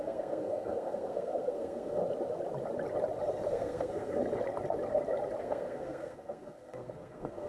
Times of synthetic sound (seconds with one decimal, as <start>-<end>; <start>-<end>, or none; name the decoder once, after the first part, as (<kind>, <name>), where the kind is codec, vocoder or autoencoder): 0.0-2.0 (codec, SNAC); 3.5-4.2; 5.4-7.5